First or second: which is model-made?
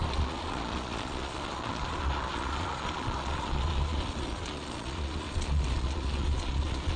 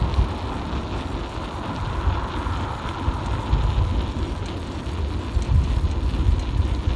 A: first